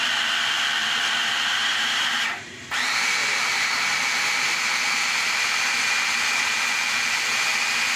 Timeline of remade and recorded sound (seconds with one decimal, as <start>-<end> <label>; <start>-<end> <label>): 0.0-1.2 recorded; 1.2-2.6 remade; 2.6-3.2 recorded; 3.2-4.0 remade; 4.0-8.0 recorded